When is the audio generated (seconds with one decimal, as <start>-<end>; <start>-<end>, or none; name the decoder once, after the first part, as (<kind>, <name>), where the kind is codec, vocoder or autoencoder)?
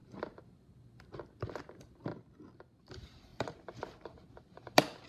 none